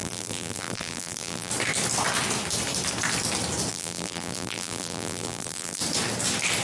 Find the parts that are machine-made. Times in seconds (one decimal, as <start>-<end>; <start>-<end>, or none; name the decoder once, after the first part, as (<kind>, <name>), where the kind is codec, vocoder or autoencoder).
0.0-1.5 (vocoder, BigVGAN v2); 3.7-5.8